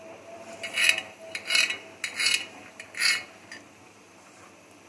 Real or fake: real